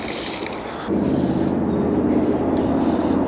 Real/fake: real